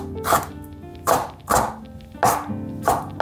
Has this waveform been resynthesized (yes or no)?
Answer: no